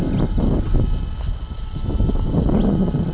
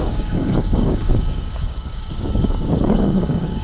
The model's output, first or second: second